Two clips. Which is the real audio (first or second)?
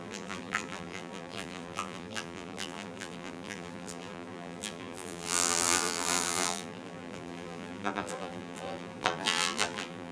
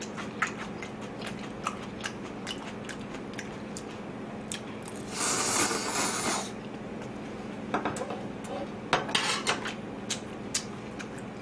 second